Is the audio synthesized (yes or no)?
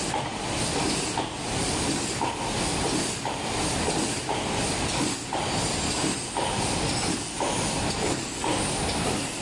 no